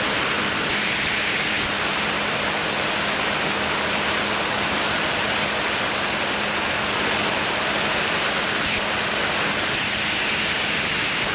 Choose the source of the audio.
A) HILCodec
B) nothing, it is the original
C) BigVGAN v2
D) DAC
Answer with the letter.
B